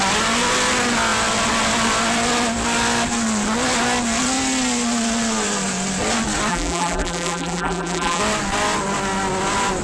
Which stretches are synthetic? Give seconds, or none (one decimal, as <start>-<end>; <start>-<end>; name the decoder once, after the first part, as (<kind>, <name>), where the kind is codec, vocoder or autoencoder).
6.5-8.2 (vocoder, BigVGAN v2)